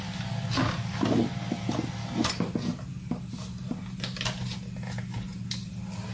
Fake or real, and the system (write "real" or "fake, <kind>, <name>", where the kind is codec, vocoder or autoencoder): real